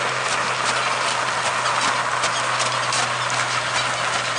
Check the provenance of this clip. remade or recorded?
recorded